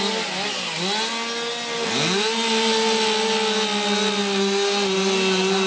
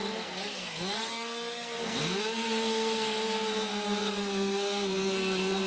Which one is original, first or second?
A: first